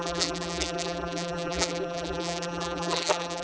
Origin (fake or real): fake